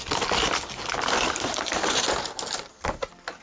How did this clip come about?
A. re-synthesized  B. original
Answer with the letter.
B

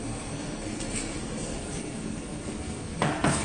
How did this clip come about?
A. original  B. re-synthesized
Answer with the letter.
B